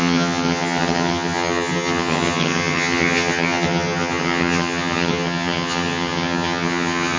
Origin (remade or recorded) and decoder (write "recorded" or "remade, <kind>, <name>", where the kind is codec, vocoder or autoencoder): remade, vocoder, HiFi-GAN